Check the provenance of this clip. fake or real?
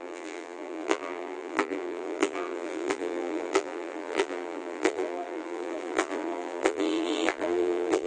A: fake